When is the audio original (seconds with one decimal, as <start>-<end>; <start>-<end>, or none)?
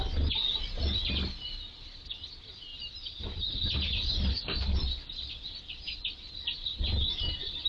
0.0-7.7